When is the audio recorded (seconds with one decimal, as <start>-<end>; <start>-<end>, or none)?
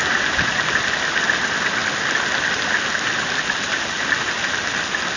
0.0-5.2